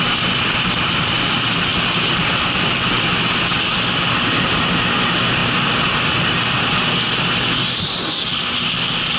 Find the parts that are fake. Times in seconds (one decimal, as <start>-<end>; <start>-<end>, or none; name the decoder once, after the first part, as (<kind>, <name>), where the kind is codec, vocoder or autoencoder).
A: none